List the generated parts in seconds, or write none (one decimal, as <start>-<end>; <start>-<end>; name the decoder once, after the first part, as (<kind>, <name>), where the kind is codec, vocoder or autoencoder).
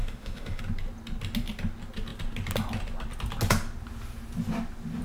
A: 0.0-0.6 (autoencoder, DAC-VAE)